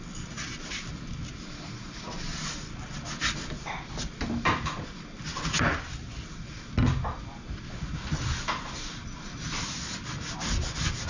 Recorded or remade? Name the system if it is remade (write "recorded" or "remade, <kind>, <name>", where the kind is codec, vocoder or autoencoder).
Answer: recorded